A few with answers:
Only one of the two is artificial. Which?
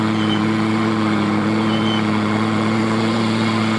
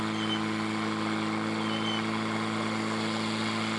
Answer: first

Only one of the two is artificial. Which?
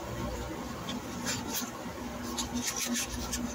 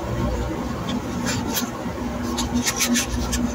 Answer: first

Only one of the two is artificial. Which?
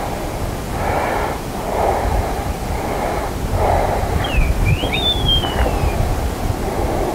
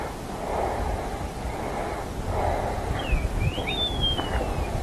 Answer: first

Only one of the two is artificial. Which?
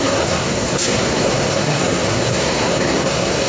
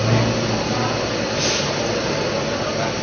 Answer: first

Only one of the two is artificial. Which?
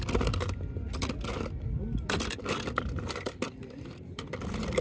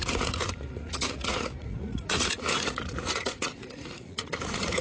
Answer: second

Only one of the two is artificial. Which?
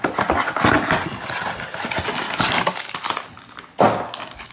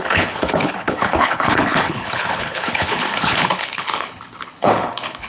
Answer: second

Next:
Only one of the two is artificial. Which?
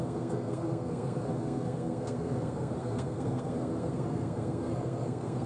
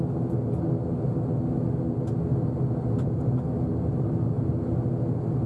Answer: first